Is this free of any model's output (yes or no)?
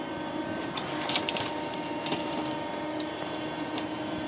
yes